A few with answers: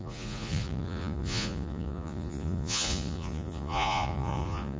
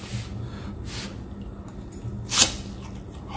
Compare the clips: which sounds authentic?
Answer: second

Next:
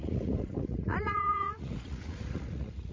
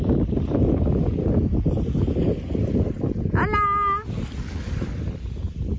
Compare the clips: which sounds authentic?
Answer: second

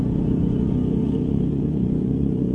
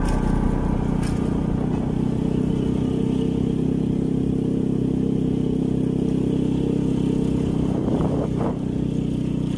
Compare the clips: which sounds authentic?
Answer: second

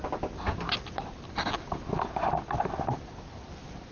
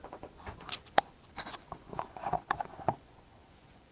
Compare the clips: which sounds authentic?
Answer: first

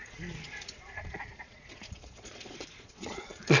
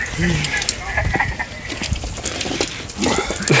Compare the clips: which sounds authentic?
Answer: second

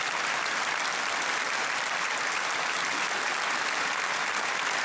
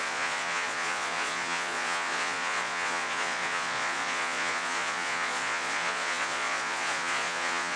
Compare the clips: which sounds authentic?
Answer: first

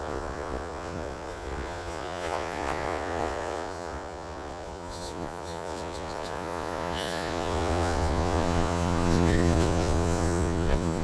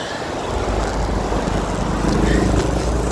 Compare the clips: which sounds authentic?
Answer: second